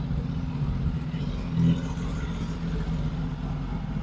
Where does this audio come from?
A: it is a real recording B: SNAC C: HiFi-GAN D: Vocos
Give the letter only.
A